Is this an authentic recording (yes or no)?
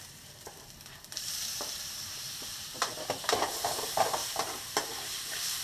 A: no